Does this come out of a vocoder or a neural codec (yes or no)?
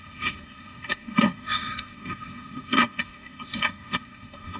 yes